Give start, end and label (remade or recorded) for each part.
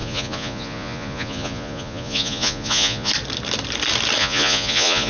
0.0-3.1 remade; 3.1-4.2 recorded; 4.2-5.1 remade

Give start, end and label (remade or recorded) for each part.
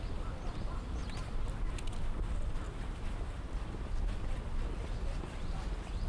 0.0-6.1 recorded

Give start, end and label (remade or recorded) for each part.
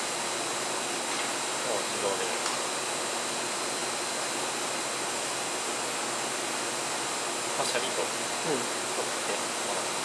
0.0-10.0 recorded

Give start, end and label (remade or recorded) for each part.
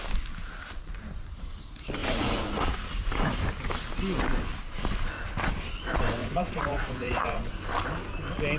0.0-2.0 recorded; 2.0-2.9 remade; 2.9-6.2 recorded; 6.2-7.5 remade; 7.5-8.6 recorded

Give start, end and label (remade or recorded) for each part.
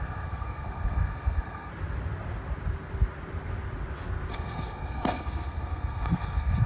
0.0-1.7 remade; 1.7-4.3 recorded; 4.3-6.7 remade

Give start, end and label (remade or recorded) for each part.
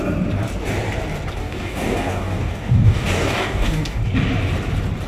0.0-1.4 recorded; 1.4-4.0 remade; 4.0-5.1 recorded